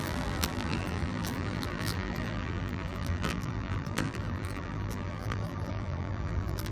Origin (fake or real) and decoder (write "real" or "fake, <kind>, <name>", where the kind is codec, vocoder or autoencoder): fake, vocoder, BigVGAN v2